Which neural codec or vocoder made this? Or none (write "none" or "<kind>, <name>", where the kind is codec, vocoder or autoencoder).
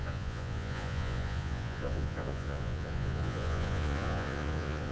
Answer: vocoder, Vocos